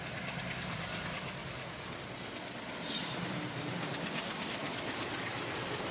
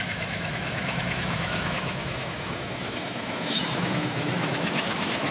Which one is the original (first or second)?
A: first